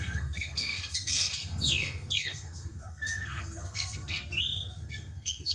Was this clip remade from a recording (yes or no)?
yes